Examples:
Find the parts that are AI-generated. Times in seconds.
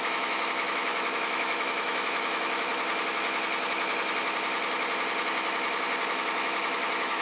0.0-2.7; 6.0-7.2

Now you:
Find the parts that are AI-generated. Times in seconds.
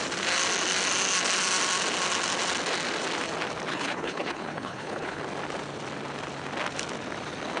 3.7-5.2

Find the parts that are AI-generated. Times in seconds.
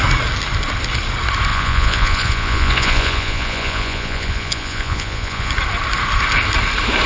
1.5-5.5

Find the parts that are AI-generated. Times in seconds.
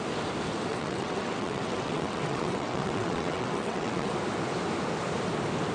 0.7-4.1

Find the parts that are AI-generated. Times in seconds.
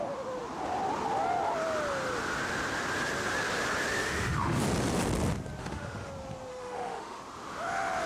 4.0-4.6; 5.6-6.1; 6.5-7.2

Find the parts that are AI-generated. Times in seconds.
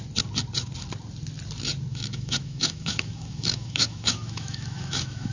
1.9-5.3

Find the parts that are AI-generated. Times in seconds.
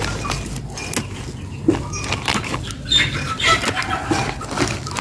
2.3-3.6